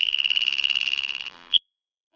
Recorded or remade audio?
remade